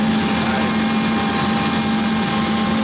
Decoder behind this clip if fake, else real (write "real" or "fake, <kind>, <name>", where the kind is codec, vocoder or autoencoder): real